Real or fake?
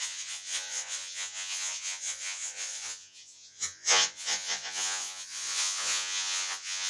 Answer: fake